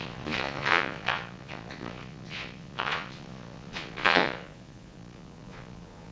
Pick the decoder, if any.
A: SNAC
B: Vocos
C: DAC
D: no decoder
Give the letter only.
B